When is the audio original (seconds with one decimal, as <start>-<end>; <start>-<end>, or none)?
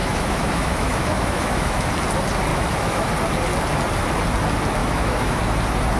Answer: 1.9-2.5; 3.1-4.8; 5.4-6.0